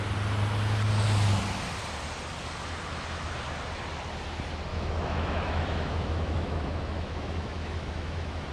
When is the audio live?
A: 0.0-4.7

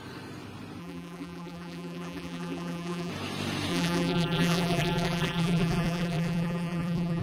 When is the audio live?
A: 0.0-0.8; 3.1-3.7

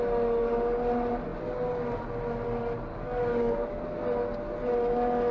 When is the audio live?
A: 0.0-2.9; 3.8-5.3

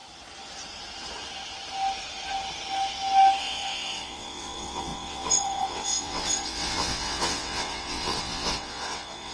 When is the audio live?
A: 0.0-3.4

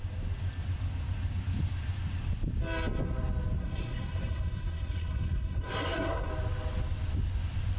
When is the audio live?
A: 0.0-3.6; 6.3-7.8

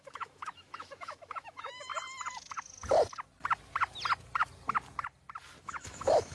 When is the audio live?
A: 1.9-5.6

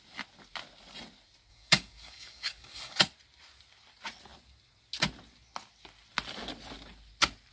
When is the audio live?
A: 0.0-1.5; 3.0-7.5

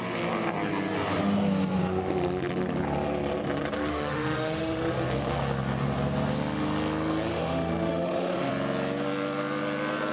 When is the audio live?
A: 0.0-3.9; 4.9-7.3; 8.5-10.1